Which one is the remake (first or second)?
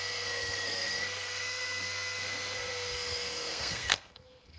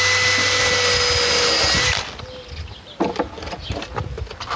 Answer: first